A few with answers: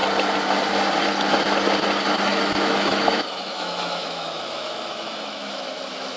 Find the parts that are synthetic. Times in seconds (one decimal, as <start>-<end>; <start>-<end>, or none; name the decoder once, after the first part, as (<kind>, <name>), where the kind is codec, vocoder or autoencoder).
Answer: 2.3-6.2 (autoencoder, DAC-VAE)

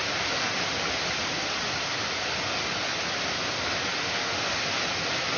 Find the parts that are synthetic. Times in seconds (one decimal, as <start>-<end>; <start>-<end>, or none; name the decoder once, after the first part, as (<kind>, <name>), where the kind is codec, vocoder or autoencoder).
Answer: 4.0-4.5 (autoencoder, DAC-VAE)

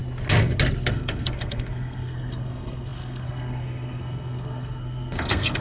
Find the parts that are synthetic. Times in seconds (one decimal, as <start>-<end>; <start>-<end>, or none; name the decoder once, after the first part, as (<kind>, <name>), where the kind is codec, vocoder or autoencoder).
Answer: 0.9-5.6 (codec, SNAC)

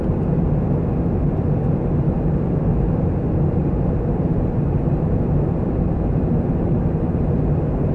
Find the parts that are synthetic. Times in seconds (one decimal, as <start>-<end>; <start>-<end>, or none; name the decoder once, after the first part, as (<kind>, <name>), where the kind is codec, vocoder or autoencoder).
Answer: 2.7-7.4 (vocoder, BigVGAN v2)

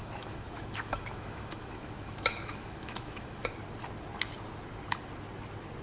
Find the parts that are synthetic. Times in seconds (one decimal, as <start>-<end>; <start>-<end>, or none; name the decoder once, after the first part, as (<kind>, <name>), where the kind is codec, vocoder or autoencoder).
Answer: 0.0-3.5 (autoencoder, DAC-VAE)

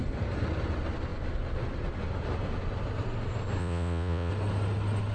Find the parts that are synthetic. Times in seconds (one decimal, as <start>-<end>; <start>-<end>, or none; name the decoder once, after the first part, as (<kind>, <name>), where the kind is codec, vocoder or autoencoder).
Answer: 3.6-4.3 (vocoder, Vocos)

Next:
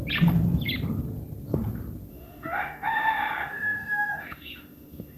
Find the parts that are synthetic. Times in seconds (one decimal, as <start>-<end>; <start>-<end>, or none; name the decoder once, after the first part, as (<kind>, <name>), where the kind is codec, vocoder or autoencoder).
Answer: 2.1-5.2 (autoencoder, DAC-VAE)